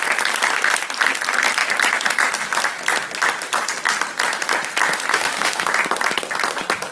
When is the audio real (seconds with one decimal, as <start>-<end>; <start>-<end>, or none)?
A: 0.0-5.1; 5.7-6.9